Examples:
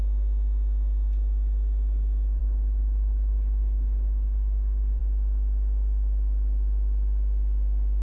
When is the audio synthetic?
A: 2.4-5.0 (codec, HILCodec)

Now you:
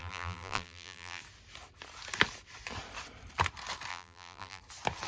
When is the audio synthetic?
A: 0.0-1.2 (vocoder, BigVGAN v2); 3.9-4.6